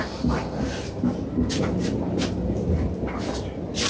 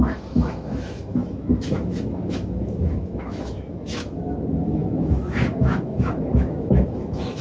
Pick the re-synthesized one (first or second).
second